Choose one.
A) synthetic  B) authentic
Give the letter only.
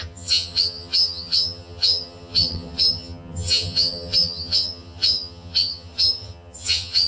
A